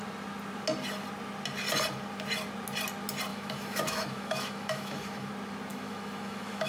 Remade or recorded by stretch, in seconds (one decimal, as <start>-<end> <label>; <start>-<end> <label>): 0.0-3.3 recorded; 3.3-5.3 remade; 5.3-5.7 recorded; 5.7-6.7 remade